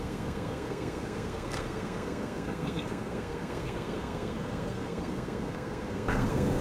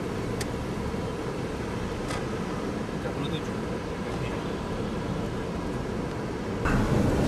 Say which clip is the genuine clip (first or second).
second